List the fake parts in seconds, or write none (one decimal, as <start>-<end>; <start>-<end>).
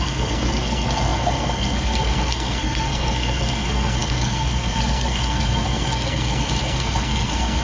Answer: 0.0-7.6